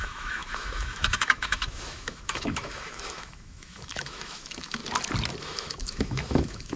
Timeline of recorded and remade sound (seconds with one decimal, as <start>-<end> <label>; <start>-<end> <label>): 0.0-4.8 remade; 4.8-5.4 recorded; 5.4-6.8 remade